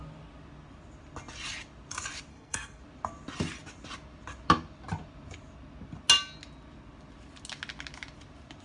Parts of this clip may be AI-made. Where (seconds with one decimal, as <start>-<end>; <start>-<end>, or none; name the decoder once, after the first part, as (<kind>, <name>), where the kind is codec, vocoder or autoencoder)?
2.3-2.8 (codec, SNAC)